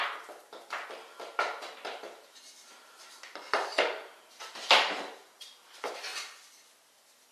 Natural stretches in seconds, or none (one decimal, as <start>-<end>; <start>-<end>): 6.1-7.3

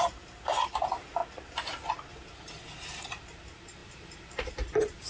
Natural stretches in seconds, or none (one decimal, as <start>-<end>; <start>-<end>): 1.2-2.1

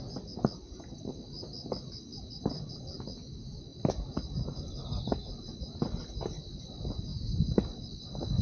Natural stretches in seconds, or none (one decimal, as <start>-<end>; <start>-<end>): 0.0-2.1; 2.8-3.7; 5.0-8.4

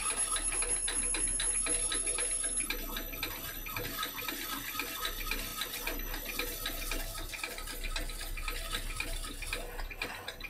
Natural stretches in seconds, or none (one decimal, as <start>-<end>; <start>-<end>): 0.0-3.6; 4.3-10.5

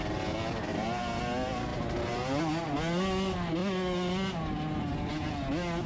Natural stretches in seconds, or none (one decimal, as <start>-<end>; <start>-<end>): 0.0-0.7; 1.2-1.7; 2.4-5.9

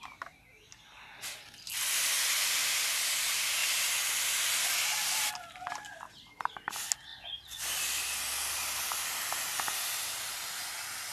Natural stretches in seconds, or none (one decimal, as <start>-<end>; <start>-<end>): 0.0-11.1